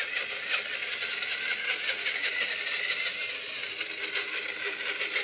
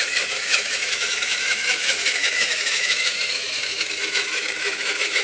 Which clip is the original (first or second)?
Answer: first